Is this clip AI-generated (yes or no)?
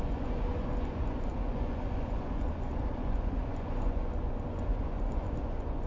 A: yes